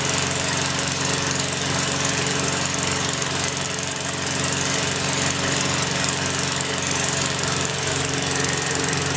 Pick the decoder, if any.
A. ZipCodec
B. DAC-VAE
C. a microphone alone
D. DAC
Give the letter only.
D